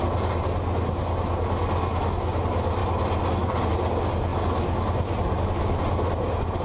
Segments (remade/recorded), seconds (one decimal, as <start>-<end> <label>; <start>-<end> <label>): 0.0-6.6 recorded